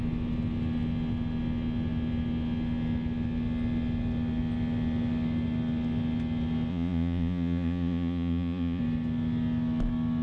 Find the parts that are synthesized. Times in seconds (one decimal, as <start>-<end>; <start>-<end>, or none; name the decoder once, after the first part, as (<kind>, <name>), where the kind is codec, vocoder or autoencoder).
6.7-8.8 (vocoder, Vocos)